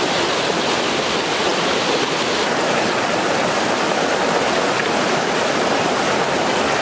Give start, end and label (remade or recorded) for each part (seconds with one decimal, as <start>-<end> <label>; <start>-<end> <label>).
0.0-6.8 recorded